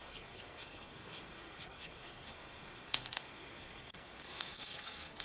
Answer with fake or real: fake